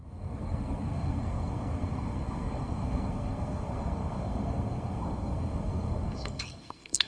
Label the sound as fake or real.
fake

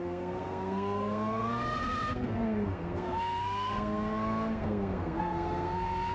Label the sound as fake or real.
fake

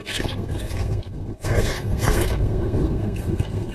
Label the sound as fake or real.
fake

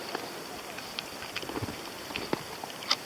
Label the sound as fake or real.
real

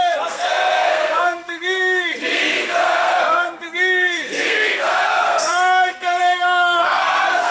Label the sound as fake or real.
fake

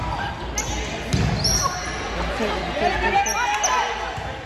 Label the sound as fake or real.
real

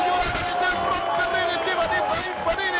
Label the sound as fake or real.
real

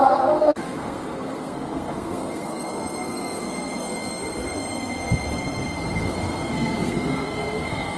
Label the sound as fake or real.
fake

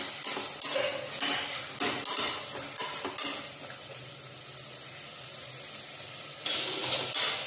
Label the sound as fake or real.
real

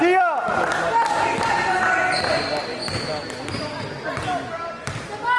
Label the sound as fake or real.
real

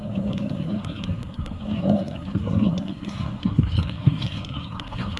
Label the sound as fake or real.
fake